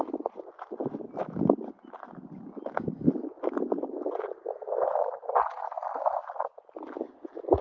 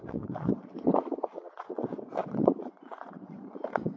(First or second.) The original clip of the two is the first